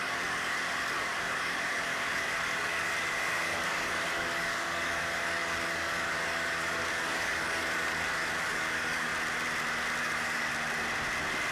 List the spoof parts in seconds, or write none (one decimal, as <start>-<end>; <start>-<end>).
0.0-9.1; 10.0-10.5